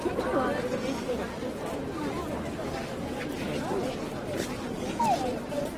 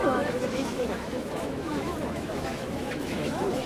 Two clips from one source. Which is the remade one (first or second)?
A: second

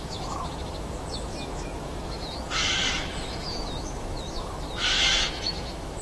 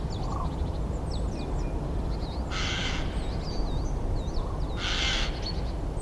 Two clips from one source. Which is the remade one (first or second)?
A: first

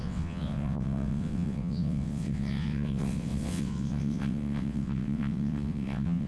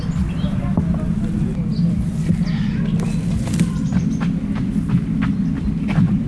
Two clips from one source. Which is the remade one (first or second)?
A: first